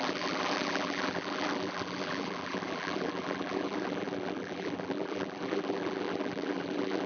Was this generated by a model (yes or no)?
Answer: yes